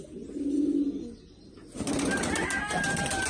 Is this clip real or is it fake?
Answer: real